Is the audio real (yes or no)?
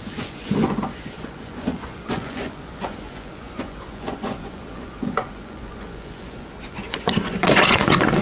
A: no